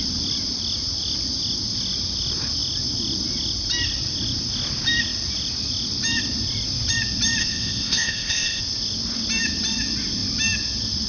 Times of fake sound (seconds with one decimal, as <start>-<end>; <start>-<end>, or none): 7.4-8.6